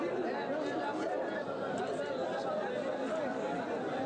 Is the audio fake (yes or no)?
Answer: no